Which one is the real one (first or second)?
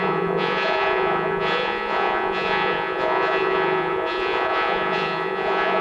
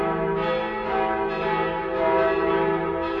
second